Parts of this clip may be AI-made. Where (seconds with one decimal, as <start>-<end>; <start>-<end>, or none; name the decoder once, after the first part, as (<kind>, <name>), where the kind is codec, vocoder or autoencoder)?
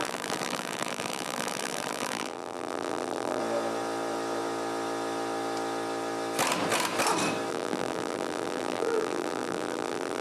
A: 0.0-3.4 (vocoder, BigVGAN v2); 7.5-10.2